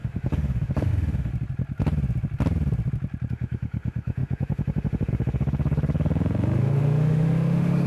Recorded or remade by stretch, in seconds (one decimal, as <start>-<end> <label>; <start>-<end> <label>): 0.0-1.3 remade; 1.3-3.3 recorded; 3.3-7.9 remade